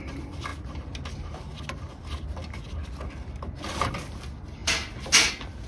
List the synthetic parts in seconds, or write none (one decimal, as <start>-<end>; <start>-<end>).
none